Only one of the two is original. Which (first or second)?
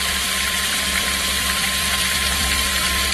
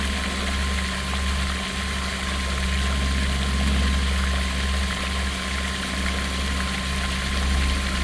second